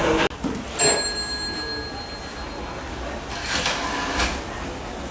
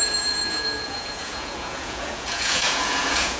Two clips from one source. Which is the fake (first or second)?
second